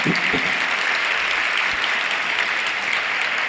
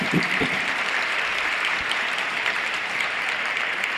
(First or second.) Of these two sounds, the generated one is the second